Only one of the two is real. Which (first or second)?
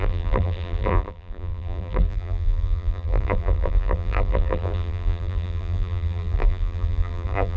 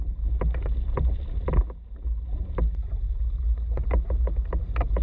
second